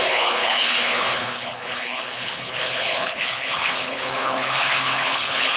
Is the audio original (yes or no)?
no